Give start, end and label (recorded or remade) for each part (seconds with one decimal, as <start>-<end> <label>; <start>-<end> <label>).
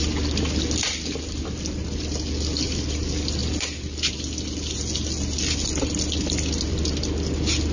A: 0.0-7.7 recorded